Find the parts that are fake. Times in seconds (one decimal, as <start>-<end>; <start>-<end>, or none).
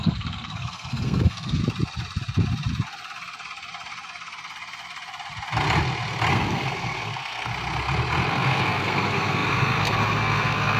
0.0-1.6; 6.3-7.5; 8.3-10.8